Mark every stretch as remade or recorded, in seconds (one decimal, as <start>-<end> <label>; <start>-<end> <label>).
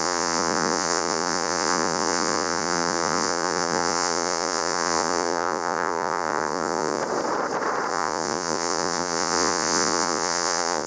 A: 0.0-7.0 remade; 7.0-7.9 recorded; 7.9-10.9 remade